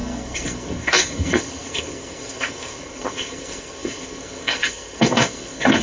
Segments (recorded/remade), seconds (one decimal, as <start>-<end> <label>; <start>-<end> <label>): 0.0-5.8 remade